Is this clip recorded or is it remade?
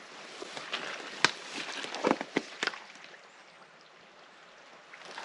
recorded